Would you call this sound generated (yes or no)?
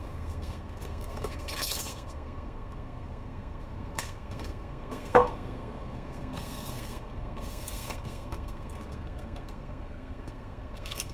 yes